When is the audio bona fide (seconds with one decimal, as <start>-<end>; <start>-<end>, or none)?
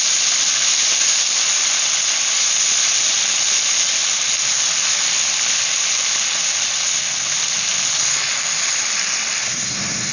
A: 0.0-9.4